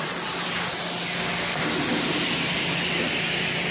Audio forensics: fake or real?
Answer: real